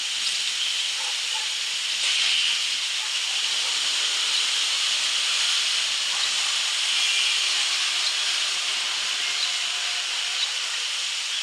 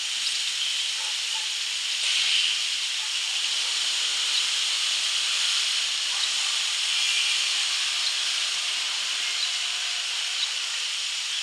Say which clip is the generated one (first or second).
second